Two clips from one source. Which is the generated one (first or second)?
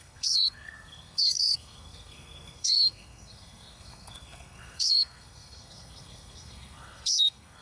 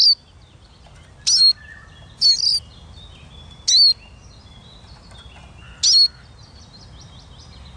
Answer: first